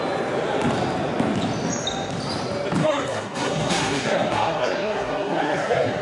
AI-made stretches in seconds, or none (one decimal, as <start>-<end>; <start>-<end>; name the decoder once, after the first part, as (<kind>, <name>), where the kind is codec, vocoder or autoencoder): 2.8-6.0 (codec, SNAC)